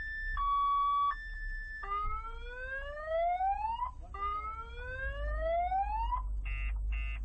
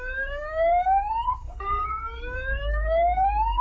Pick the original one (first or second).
first